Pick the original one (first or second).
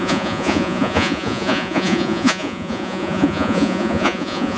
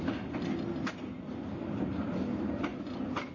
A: second